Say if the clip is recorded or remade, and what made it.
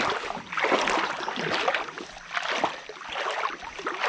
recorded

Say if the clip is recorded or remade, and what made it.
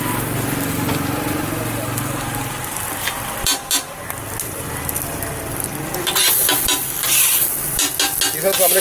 recorded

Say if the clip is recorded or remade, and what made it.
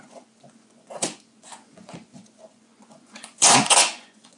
remade, vocoder, Vocos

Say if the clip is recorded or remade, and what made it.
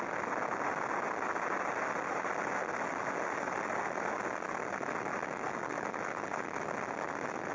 recorded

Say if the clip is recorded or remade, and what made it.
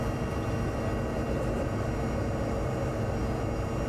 recorded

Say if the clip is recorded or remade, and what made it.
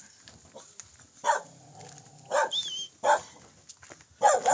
recorded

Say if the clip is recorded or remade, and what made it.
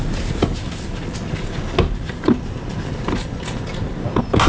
recorded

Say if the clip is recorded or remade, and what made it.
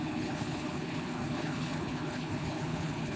remade, codec, HILCodec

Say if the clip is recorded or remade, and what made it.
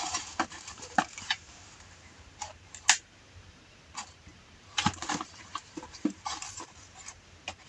remade, vocoder, BigVGAN v2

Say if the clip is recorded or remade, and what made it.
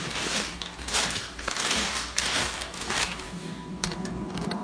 remade, codec, DAC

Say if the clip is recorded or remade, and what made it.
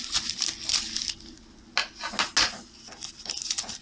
recorded